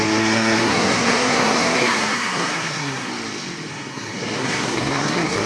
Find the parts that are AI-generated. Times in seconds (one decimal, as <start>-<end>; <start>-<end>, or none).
0.0-3.1; 3.7-5.5